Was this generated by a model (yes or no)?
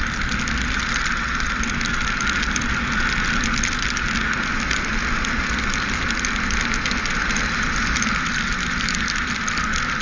no